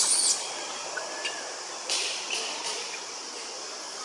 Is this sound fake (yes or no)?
no